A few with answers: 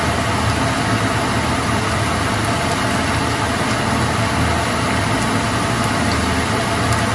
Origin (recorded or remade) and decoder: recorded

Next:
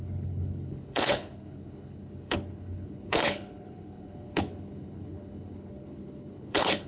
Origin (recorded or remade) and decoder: remade, codec, HILCodec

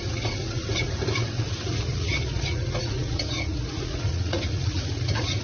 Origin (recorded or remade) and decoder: remade, vocoder, Vocos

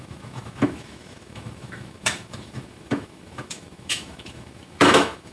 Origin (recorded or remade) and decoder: remade, autoencoder, DAC-VAE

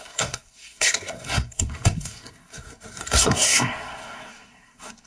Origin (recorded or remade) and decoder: remade, codec, SNAC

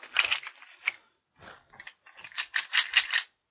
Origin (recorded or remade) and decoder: recorded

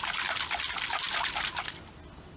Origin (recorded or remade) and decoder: recorded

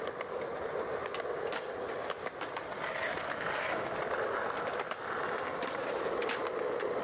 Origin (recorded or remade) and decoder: recorded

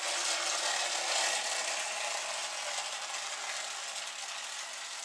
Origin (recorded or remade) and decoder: recorded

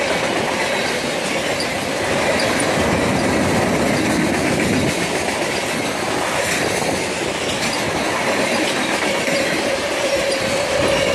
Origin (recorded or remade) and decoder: recorded